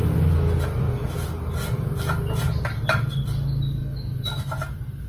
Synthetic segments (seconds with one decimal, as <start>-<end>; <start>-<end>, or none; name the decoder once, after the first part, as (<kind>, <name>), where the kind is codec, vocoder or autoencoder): 3.8-4.4 (autoencoder, DAC-VAE)